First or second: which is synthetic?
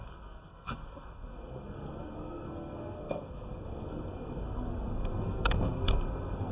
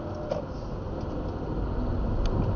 first